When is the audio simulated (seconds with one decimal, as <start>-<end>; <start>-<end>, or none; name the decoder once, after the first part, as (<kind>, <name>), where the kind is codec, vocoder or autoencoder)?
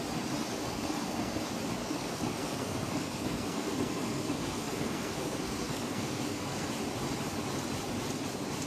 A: 0.5-1.4 (codec, SNAC); 1.8-6.7